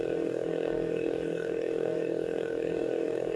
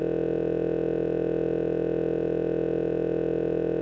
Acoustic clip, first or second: second